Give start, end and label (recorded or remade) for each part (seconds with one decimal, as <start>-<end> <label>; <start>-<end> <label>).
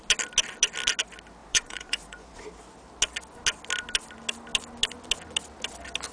0.0-1.4 recorded; 1.4-2.4 remade; 2.4-6.1 recorded